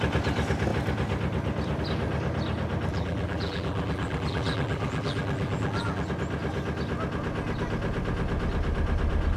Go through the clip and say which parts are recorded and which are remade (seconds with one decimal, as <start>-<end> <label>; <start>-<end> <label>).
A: 0.0-2.9 recorded; 2.9-6.1 remade; 6.1-9.4 recorded